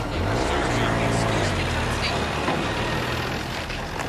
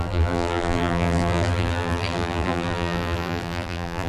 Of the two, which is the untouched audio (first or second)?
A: first